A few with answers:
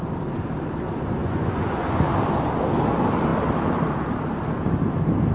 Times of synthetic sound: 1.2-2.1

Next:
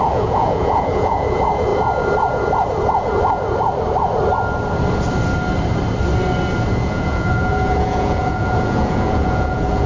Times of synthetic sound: 0.0-1.7; 6.7-9.9

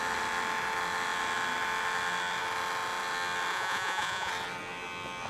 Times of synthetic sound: 3.5-4.3

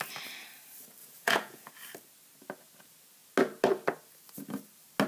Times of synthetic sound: 1.0-1.7

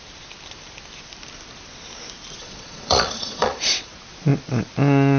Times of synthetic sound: 2.4-3.9

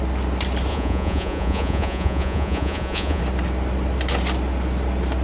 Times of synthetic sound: 0.7-3.2

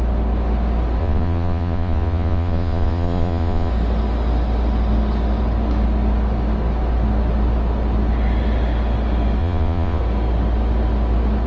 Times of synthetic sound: 1.0-3.7; 9.4-10.0

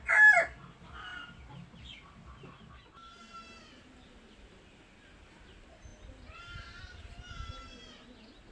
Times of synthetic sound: none